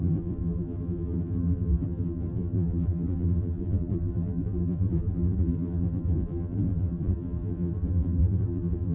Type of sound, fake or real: fake